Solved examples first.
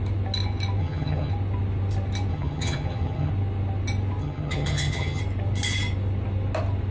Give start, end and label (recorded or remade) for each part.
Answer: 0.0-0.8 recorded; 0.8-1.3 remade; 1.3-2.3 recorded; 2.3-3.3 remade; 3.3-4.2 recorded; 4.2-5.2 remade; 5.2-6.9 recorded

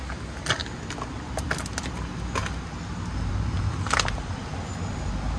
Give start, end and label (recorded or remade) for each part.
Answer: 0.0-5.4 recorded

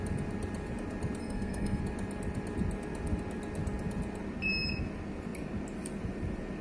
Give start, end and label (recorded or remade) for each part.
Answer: 0.0-1.2 recorded; 1.2-1.8 remade; 1.8-6.6 recorded

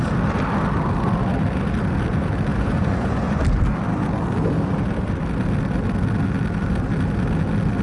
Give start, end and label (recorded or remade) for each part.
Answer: 0.0-2.5 recorded; 2.5-3.4 remade; 3.4-7.8 recorded